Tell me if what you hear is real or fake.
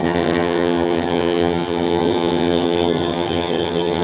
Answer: fake